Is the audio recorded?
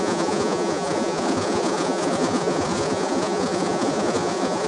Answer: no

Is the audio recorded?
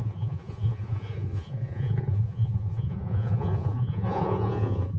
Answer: no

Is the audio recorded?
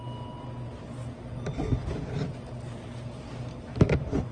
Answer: yes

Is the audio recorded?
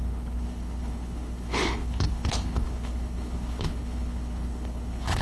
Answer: no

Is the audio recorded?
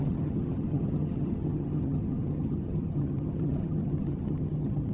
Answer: no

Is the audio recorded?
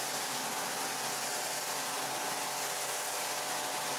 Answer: yes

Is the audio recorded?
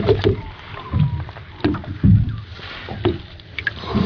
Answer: yes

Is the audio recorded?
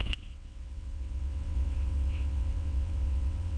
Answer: no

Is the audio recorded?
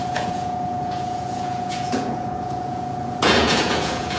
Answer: no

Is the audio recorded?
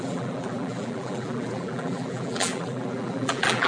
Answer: no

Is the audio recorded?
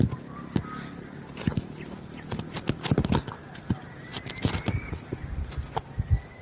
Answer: yes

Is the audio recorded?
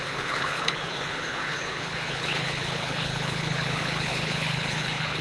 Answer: no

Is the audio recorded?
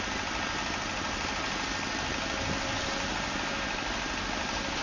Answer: yes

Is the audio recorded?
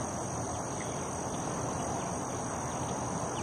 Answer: no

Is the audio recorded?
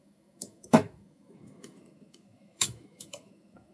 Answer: no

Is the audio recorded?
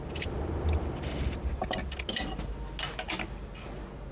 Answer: yes